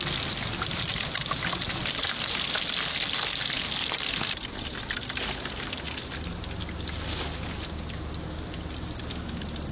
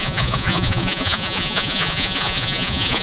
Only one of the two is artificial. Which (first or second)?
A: second